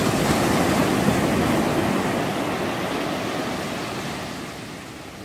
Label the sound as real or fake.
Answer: real